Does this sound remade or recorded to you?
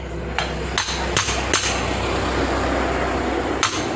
recorded